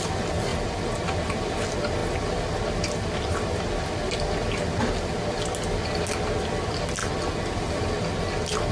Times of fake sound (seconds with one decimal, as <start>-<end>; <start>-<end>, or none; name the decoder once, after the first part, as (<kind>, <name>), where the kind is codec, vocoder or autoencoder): none